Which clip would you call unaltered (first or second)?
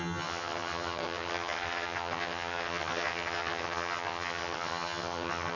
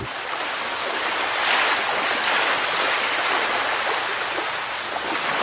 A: second